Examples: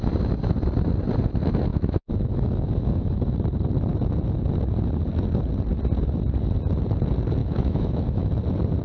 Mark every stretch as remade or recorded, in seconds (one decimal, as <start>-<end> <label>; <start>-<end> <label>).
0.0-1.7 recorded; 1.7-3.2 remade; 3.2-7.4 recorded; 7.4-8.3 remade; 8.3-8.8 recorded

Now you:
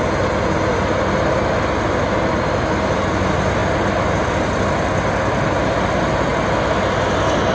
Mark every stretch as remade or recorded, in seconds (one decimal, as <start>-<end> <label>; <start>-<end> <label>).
0.0-7.5 recorded

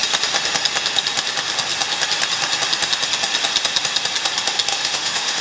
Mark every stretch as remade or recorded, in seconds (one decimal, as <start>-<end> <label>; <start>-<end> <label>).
0.0-4.7 recorded; 4.7-5.4 remade

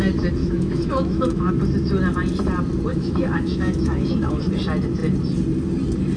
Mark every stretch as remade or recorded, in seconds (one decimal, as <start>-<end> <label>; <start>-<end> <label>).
0.0-0.4 recorded; 0.4-1.5 remade; 1.5-2.9 recorded; 2.9-4.4 remade; 4.4-6.2 recorded